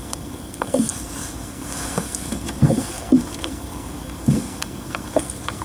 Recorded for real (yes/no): no